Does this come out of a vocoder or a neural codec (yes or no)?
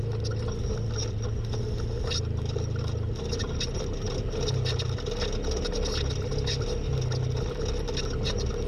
no